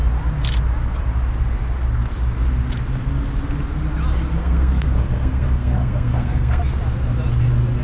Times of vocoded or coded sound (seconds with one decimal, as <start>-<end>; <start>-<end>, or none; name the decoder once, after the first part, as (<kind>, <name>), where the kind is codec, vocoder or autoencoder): 4.4-6.6 (codec, SNAC)